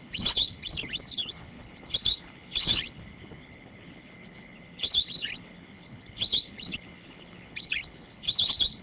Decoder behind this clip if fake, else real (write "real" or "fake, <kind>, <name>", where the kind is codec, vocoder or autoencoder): fake, codec, HILCodec